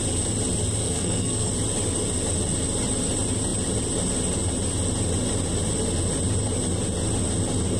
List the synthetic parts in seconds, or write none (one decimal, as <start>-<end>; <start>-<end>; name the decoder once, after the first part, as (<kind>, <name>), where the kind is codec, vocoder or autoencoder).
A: 0.8-1.5 (codec, SNAC)